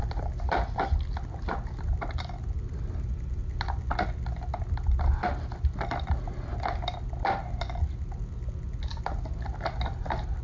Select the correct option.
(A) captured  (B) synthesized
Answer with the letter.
A